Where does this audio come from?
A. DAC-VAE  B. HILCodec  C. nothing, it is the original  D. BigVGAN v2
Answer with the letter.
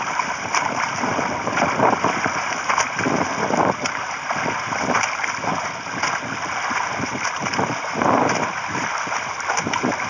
D